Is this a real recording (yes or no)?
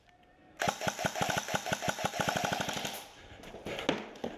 yes